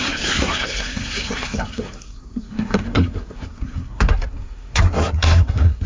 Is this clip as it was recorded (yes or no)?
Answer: no